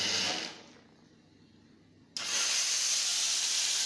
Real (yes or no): yes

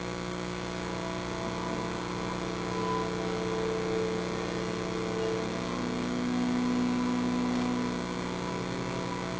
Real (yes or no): yes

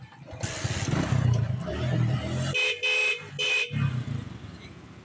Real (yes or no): yes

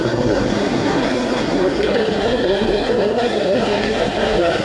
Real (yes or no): no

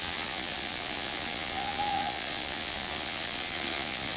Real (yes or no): no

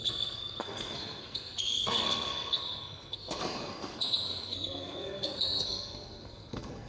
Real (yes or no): no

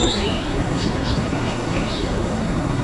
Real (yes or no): no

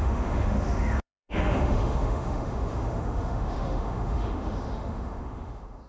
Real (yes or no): no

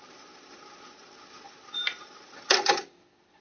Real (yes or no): yes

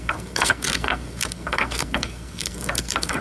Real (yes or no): no